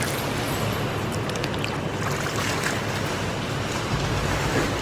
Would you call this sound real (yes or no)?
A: yes